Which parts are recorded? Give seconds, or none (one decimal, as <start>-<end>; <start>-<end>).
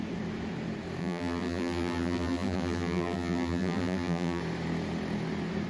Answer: 0.0-1.0; 4.4-5.7